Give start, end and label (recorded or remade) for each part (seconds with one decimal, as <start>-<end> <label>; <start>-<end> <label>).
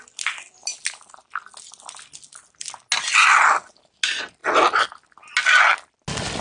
0.0-6.4 recorded